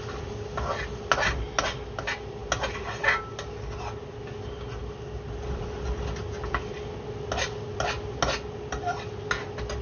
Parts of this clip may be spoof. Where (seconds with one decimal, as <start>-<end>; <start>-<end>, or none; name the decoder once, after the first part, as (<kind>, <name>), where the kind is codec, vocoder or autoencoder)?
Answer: none